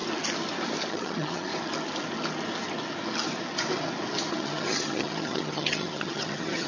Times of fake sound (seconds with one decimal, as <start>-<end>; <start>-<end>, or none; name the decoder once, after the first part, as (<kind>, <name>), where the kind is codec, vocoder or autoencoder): 0.9-1.5 (vocoder, HiFi-GAN); 4.3-6.7